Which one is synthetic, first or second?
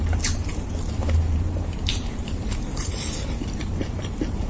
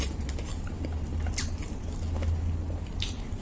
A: first